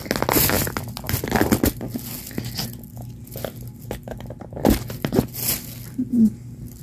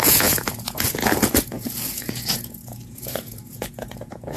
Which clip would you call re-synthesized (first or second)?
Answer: second